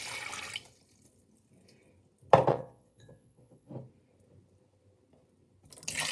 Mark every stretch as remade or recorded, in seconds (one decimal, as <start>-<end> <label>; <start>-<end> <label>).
0.0-2.5 recorded; 2.5-3.7 remade; 3.7-6.1 recorded